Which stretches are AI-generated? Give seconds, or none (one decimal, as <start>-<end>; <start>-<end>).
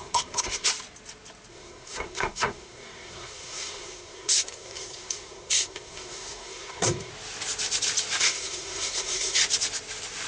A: 0.0-0.7; 1.5-7.1; 8.2-9.4